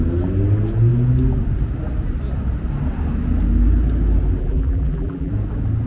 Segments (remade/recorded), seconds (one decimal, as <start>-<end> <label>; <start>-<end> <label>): 0.0-4.4 recorded; 4.4-5.3 remade; 5.3-5.9 recorded